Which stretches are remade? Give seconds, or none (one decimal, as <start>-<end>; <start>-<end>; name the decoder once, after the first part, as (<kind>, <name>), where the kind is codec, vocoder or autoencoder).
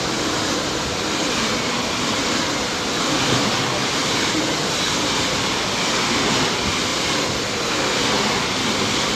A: 4.0-5.2 (vocoder, BigVGAN v2); 6.9-7.4